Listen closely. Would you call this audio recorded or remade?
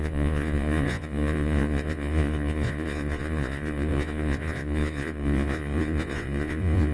remade